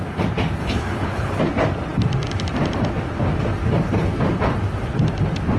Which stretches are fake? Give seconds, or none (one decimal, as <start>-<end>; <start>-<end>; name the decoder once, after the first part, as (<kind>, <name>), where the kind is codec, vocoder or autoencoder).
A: 0.6-1.4 (codec, HILCodec)